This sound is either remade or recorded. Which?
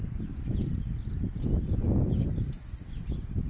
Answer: recorded